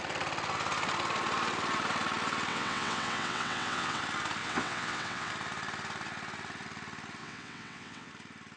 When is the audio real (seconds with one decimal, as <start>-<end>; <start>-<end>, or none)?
0.0-2.5; 4.0-4.4; 5.3-7.2; 8.1-8.6